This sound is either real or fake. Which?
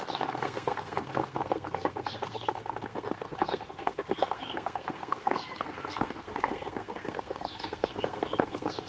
fake